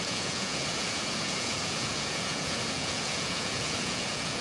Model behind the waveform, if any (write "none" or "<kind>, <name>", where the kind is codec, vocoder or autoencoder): vocoder, Vocos